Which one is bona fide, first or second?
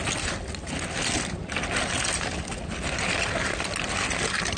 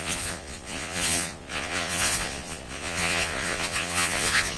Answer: first